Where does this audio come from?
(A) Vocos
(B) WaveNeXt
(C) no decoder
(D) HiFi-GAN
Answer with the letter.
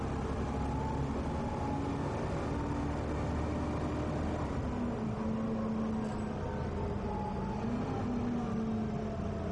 C